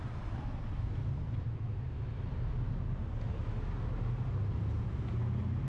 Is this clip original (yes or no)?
yes